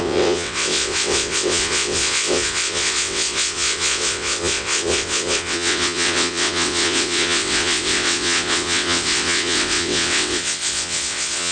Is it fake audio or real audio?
fake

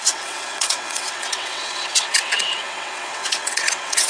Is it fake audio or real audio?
fake